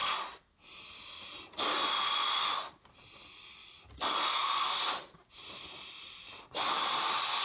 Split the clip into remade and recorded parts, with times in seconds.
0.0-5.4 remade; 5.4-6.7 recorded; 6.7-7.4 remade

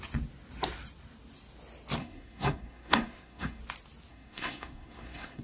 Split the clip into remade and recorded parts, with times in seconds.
0.0-2.0 recorded; 2.0-3.6 remade; 3.6-4.1 recorded; 4.1-5.4 remade

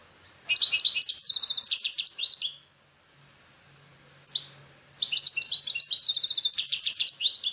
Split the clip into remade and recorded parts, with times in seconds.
0.0-7.5 recorded

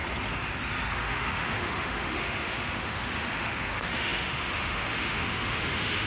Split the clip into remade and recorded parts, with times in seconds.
0.0-1.0 recorded; 1.0-6.1 remade